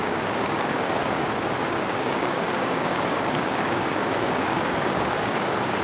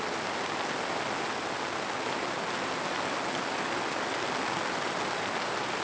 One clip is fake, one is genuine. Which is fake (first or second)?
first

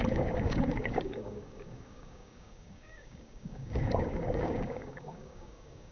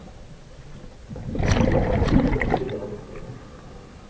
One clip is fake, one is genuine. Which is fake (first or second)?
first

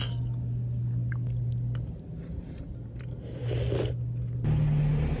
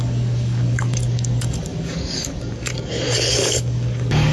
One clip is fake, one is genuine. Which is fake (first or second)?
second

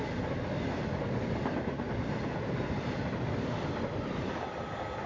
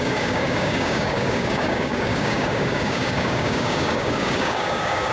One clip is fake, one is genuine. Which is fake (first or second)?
second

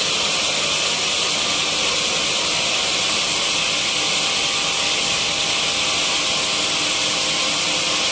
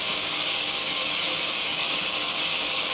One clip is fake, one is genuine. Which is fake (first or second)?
second